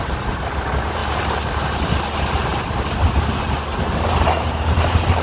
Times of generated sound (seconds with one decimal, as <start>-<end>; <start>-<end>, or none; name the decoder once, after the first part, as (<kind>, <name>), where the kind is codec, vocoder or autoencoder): 0.0-1.0 (vocoder, BigVGAN v2); 4.1-5.2